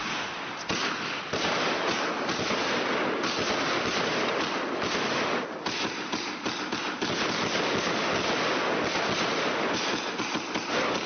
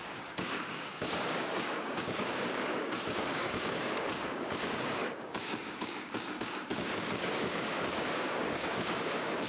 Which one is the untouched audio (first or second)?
first